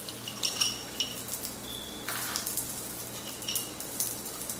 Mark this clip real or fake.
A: real